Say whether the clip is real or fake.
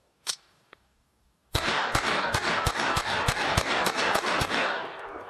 fake